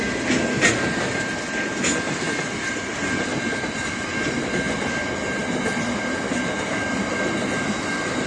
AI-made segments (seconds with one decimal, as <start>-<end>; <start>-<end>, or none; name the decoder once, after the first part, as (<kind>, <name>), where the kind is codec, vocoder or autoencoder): none